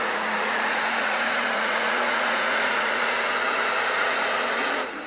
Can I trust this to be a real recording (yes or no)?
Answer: no